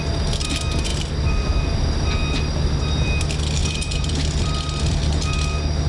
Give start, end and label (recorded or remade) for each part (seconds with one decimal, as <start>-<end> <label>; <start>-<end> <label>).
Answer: 0.0-3.6 recorded; 3.6-5.3 remade; 5.3-5.9 recorded